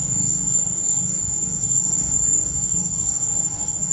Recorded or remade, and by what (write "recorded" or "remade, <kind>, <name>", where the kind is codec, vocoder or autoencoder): remade, codec, DAC